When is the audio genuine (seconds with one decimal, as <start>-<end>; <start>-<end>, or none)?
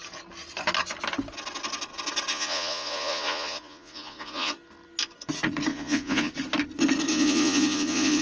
0.0-2.3; 4.5-5.7; 6.3-7.1